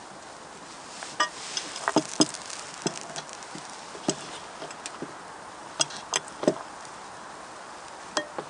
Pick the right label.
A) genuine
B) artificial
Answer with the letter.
A